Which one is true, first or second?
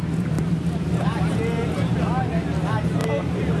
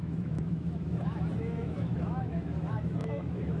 first